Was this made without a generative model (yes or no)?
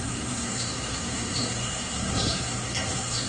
no